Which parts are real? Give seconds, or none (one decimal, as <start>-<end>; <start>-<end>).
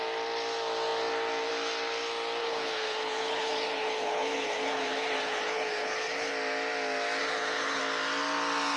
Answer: 0.0-2.4; 6.3-7.2; 7.8-8.8